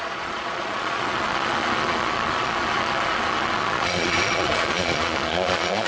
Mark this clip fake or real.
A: fake